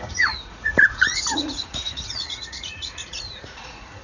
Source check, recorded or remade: remade